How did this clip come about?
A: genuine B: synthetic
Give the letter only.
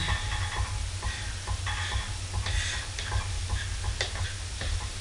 A